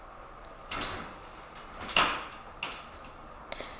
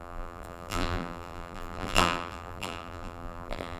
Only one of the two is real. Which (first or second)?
first